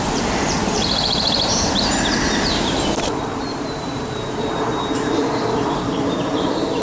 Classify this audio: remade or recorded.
remade